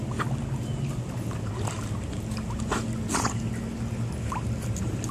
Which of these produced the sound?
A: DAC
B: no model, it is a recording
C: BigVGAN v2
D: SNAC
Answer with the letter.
B